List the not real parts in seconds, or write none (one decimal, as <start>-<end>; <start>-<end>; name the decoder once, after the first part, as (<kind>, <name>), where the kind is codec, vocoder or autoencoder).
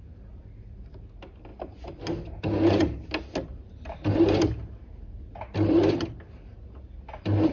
none